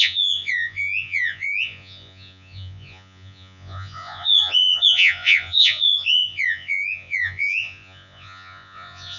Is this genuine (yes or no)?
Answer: no